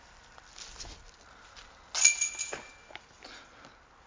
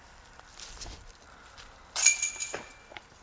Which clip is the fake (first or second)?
second